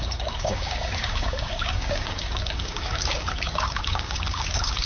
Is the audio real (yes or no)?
no